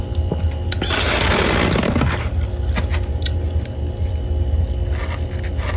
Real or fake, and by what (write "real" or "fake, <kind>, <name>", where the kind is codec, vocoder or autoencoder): real